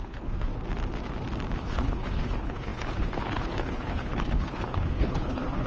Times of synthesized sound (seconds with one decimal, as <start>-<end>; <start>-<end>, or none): 0.0-0.5; 1.6-5.7